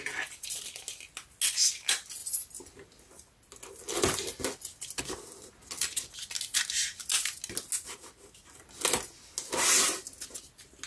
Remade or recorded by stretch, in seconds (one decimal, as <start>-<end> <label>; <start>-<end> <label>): 0.0-10.9 recorded